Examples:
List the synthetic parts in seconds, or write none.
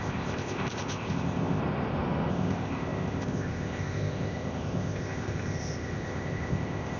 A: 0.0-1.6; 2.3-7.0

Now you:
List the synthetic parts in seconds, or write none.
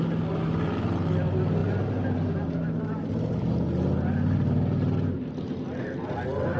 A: none